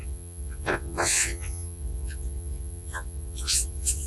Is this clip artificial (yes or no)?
yes